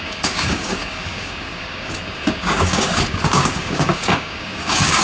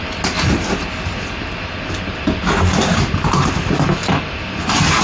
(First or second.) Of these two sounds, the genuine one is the second